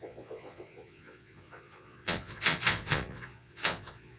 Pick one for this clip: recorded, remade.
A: remade